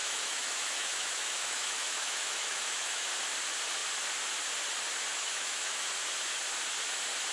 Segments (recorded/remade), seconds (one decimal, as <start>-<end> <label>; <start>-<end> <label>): 0.0-3.1 remade; 3.1-5.1 recorded; 5.1-5.9 remade; 5.9-7.3 recorded